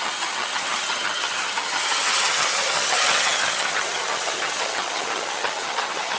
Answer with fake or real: fake